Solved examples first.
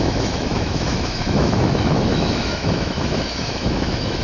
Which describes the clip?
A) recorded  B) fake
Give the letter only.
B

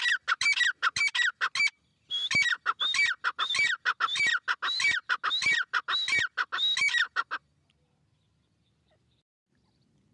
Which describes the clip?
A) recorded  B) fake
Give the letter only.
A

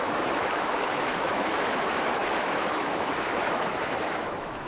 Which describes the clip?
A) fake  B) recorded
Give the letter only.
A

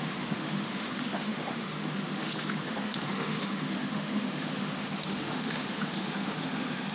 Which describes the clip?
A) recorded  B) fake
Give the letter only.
B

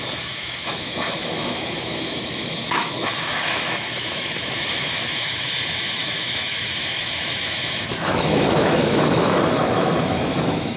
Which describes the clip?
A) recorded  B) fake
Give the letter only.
B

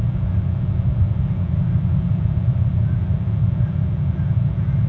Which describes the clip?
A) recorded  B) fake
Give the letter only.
A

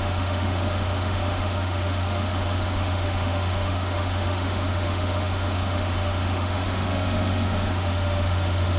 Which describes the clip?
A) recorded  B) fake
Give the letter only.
B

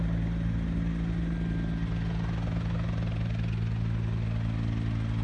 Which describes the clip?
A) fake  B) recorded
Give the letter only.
B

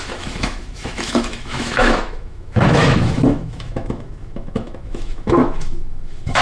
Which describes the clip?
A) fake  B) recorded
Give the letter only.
A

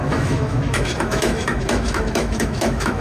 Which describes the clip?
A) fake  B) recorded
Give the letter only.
A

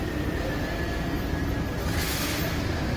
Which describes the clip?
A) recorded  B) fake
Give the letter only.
A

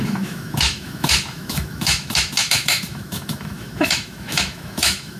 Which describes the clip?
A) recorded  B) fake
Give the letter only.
B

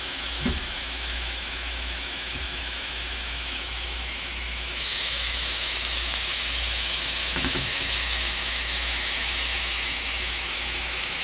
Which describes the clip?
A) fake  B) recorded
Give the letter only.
A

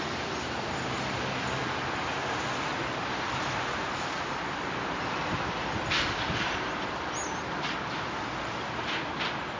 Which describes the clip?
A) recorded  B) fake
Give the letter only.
A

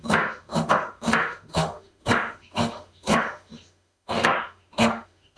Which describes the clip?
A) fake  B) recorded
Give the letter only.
A